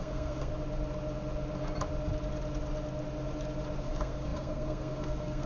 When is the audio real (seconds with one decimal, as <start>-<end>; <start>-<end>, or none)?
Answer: 0.5-3.8